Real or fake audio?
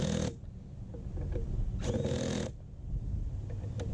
real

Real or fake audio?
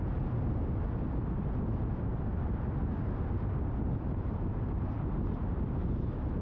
real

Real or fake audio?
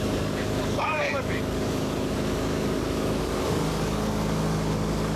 fake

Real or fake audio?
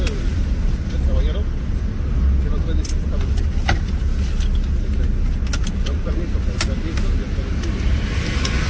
real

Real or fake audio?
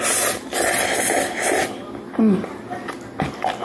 real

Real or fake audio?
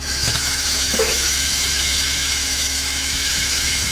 fake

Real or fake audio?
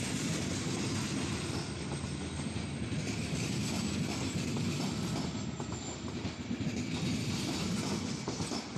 real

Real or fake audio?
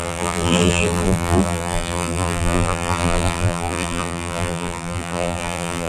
fake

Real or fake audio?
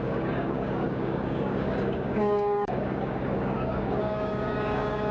fake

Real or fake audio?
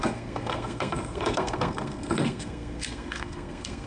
fake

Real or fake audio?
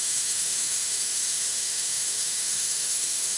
fake